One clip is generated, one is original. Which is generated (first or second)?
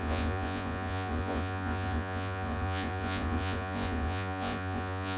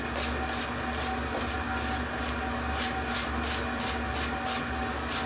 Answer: first